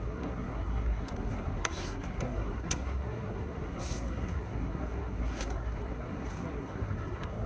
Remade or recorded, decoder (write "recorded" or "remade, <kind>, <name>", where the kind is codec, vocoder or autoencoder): remade, codec, SNAC